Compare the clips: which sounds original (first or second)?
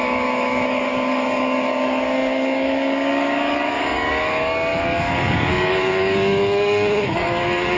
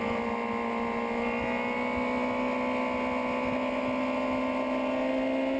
second